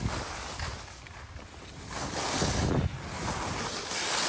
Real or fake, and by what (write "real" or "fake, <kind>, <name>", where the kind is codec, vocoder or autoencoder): real